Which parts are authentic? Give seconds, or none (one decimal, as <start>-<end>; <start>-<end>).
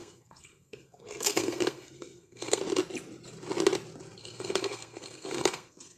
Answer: 2.6-4.2